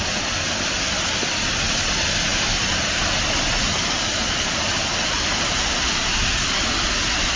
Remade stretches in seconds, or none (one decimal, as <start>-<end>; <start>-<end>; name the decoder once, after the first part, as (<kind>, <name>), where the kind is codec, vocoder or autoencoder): none